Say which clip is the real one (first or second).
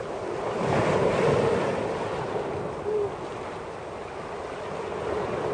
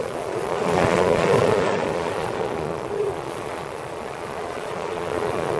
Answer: first